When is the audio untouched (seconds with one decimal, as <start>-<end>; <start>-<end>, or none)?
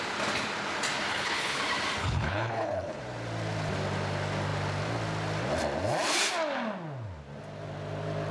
0.0-1.1; 1.6-2.0; 3.0-8.3